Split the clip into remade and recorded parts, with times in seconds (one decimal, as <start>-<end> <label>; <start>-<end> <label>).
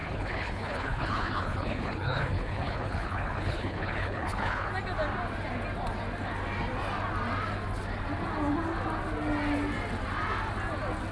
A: 0.0-4.7 remade; 4.7-11.1 recorded